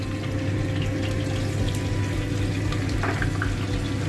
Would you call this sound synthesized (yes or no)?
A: no